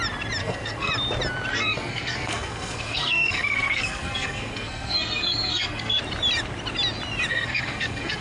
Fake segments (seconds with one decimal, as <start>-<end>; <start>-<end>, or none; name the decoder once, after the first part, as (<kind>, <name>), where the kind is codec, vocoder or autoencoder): 0.4-0.9 (codec, SNAC); 1.5-6.0; 7.3-8.2

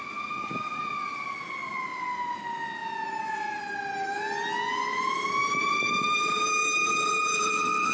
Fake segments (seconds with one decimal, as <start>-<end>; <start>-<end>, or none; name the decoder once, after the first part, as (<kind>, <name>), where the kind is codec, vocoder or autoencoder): 4.9-7.5 (vocoder, BigVGAN v2)

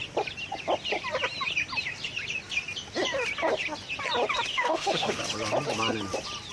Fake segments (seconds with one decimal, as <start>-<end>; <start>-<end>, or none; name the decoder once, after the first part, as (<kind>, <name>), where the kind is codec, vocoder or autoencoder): 4.5-5.2 (autoencoder, DAC-VAE)

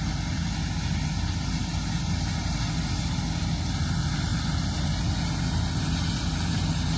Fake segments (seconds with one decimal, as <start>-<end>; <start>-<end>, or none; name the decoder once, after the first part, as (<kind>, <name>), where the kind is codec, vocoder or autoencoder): none

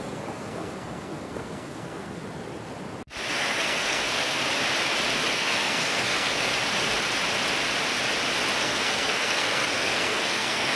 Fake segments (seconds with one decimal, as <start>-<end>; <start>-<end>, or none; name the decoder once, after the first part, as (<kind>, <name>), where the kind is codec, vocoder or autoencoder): 0.0-2.2 (codec, SNAC); 3.3-4.4; 5.3-6.5; 8.6-10.8

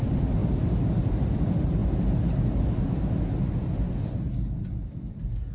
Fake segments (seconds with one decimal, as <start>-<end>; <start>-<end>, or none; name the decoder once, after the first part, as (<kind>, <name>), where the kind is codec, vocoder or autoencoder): none

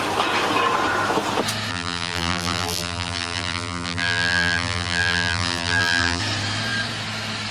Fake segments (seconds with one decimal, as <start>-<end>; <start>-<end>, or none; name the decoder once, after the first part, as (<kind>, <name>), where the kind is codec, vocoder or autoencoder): 1.7-6.2 (vocoder, BigVGAN v2)